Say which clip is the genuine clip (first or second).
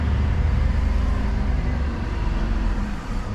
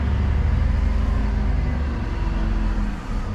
second